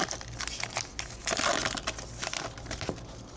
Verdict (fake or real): real